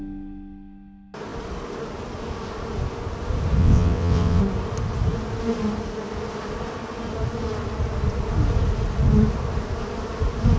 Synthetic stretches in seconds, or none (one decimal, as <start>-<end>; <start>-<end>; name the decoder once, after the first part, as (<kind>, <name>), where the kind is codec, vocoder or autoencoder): 3.6-4.4 (vocoder, WaveNeXt)